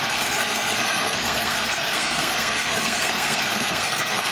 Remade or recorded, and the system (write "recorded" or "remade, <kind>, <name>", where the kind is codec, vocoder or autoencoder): remade, codec, SNAC